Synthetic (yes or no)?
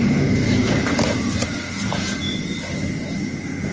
no